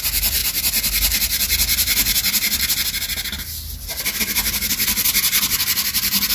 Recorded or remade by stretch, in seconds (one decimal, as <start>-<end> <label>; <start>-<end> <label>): 0.0-6.3 recorded